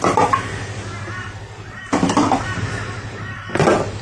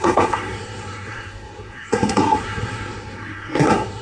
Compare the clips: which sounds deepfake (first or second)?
second